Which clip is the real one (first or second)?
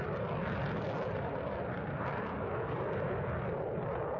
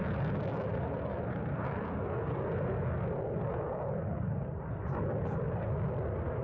second